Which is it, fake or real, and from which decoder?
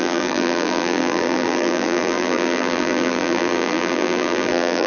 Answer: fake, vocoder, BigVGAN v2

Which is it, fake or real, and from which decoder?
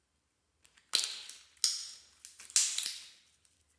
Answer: real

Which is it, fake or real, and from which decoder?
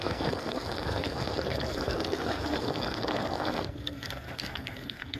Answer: fake, codec, SNAC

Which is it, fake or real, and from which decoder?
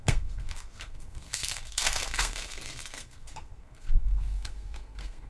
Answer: fake, codec, SNAC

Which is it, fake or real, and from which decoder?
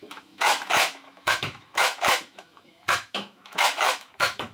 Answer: fake, autoencoder, DAC-VAE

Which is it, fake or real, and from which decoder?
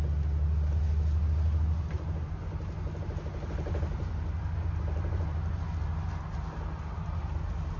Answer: real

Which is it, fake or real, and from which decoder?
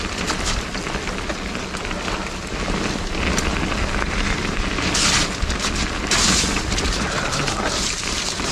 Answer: real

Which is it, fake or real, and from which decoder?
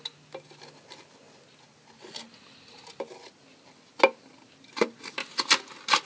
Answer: real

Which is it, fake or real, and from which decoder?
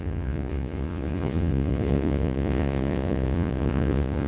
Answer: fake, vocoder, Vocos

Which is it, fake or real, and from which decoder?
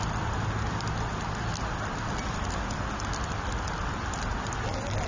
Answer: real